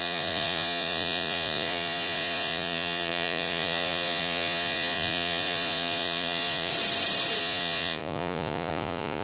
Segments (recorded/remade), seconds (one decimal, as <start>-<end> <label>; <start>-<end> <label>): 0.0-6.7 remade; 6.7-7.4 recorded; 7.4-9.2 remade